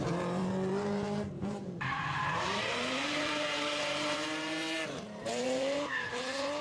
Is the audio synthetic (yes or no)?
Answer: yes